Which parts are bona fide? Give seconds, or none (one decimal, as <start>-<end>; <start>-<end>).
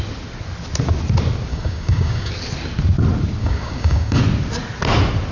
0.0-1.5; 2.3-3.4; 4.2-5.3